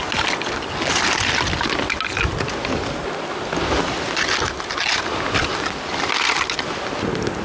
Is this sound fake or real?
real